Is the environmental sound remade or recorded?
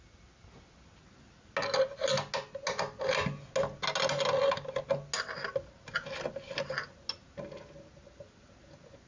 recorded